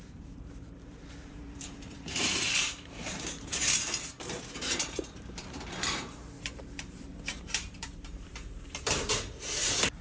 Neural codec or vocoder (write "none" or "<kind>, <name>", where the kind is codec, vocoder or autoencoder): vocoder, BigVGAN v2